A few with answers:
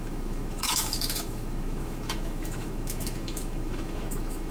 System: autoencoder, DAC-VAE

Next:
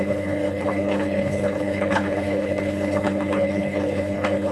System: codec, HILCodec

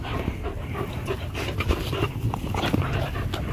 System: none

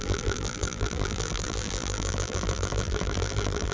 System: vocoder, BigVGAN v2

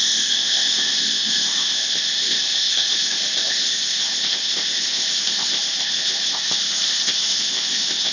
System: codec, ZipCodec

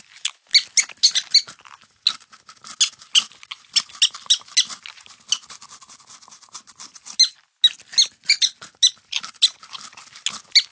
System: none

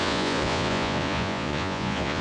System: vocoder, Vocos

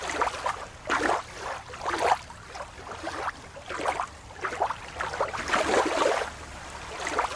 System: none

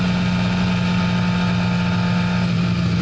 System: none